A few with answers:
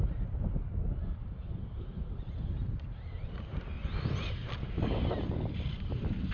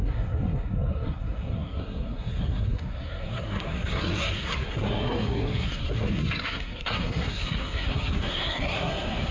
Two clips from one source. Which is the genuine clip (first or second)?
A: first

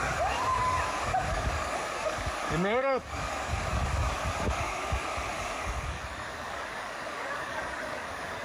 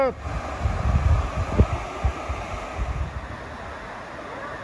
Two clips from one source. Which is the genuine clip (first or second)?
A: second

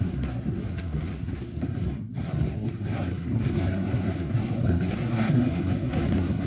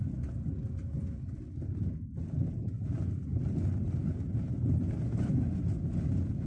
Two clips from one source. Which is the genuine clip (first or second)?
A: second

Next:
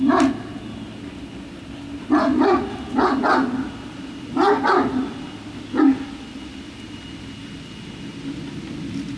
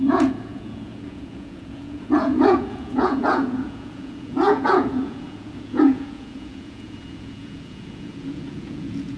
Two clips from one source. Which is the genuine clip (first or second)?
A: first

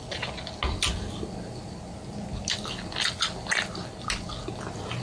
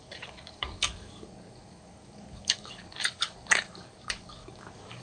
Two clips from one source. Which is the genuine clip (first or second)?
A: first